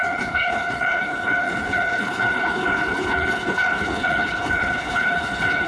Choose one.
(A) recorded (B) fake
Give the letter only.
B